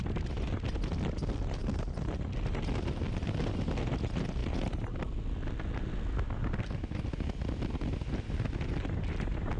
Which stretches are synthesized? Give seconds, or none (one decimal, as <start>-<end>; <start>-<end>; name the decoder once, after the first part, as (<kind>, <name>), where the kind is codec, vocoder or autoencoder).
none